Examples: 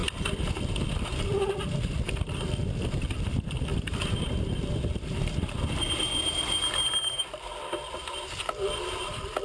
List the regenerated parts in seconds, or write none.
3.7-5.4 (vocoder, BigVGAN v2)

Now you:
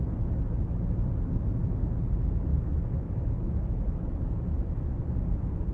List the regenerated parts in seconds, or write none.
2.5-5.0 (autoencoder, DAC-VAE)

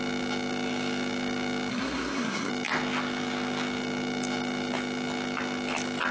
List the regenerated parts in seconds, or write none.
1.7-2.5 (codec, SNAC)

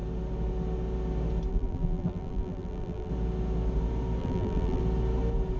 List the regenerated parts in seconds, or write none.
1.5-3.1 (vocoder, BigVGAN v2); 4.2-4.8

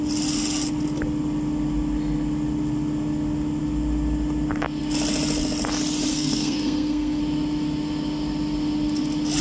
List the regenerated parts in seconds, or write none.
6.1-7.2 (codec, SNAC)

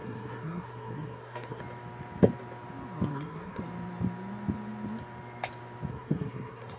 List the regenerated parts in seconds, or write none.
0.0-1.6 (codec, SNAC); 3.1-3.6; 5.9-6.8

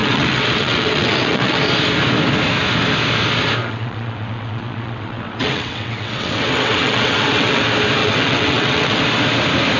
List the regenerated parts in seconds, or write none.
0.0-1.6 (vocoder, WaveNeXt); 3.6-7.6; 8.0-9.0

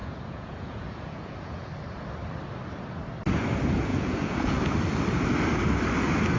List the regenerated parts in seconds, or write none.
0.0-1.7 (vocoder, Vocos); 3.9-4.6